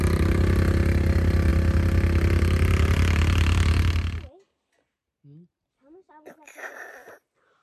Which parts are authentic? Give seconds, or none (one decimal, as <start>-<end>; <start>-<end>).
0.0-7.6